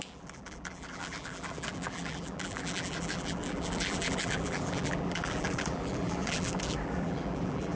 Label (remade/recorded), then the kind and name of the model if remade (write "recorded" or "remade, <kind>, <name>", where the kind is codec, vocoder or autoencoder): remade, vocoder, BigVGAN v2